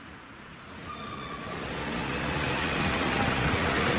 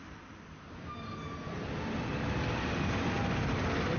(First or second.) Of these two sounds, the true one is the second